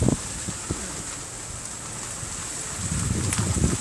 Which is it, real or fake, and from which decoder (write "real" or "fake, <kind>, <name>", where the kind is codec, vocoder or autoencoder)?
real